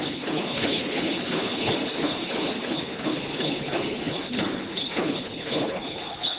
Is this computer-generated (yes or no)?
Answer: yes